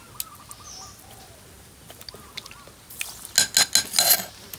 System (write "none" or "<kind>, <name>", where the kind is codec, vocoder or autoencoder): none